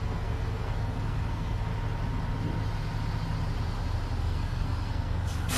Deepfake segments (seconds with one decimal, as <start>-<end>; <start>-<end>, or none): 0.0-1.7; 4.2-5.6